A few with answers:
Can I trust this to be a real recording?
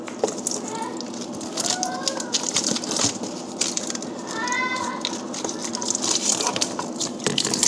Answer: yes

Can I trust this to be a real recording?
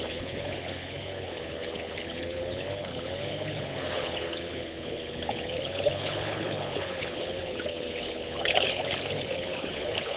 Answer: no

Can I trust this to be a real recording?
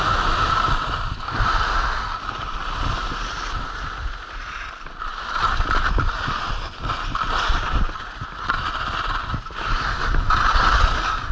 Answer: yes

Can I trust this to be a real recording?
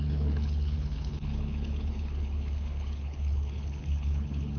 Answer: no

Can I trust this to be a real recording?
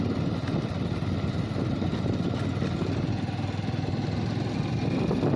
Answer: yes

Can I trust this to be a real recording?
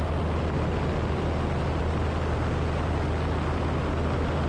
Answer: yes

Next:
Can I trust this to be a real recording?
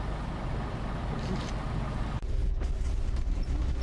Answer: yes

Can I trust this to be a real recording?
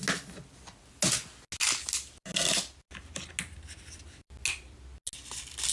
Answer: yes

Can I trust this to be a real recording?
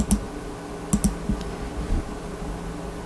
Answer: yes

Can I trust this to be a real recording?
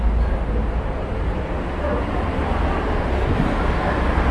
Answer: yes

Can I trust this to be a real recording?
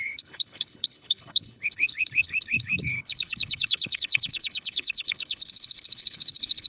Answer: no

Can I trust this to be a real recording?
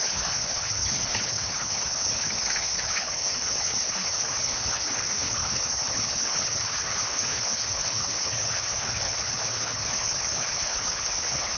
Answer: no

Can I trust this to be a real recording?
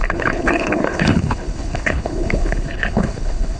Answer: no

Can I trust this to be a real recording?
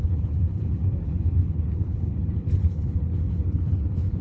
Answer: no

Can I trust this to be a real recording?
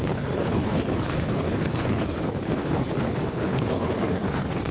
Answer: no